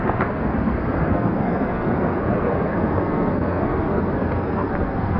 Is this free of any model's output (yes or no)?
no